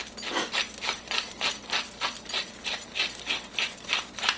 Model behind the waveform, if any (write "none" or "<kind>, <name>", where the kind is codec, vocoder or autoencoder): none